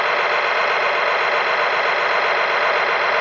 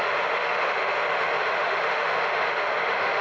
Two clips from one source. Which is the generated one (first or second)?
second